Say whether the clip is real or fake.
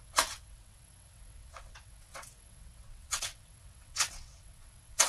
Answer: fake